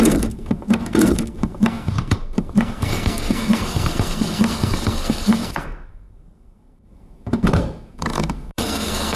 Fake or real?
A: fake